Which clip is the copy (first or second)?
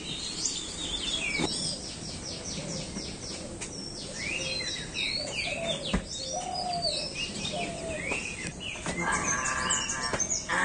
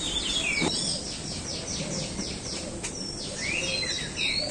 second